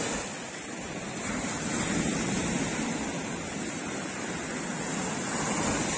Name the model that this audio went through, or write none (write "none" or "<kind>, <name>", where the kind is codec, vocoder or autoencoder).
none